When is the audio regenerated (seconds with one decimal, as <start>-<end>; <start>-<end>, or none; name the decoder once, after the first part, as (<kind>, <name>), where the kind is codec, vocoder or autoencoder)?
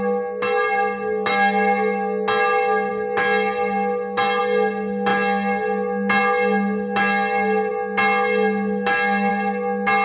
none